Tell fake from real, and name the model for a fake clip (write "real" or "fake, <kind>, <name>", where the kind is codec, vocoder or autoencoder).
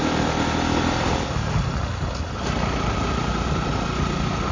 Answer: real